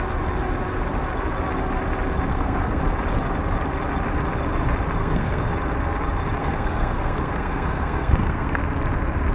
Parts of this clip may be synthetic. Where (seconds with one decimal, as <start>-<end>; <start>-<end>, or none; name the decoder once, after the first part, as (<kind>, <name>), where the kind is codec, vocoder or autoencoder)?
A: 2.3-2.8 (codec, SNAC); 5.0-5.5; 6.4-8.6